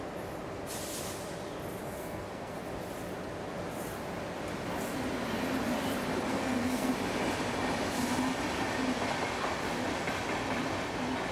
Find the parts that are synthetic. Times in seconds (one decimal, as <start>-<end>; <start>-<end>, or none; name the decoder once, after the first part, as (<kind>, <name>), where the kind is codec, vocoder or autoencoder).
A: 1.8-2.6 (codec, SNAC); 6.3-6.9